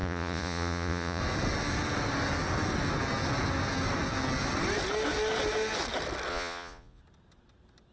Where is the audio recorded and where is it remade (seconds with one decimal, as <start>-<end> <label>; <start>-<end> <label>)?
0.0-1.2 remade; 1.2-6.3 recorded; 6.3-7.0 remade; 7.0-7.9 recorded